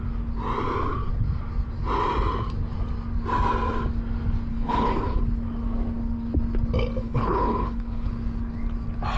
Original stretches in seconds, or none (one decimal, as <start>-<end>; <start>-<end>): 0.0-4.5; 5.2-7.0; 8.1-9.2